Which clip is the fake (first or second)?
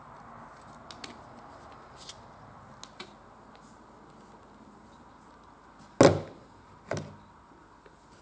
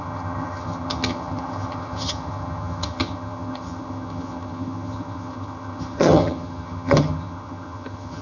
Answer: second